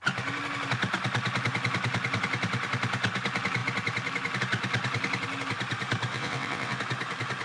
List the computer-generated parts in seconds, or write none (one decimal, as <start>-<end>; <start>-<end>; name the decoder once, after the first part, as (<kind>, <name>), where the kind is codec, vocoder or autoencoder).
6.1-6.8 (vocoder, WaveNeXt)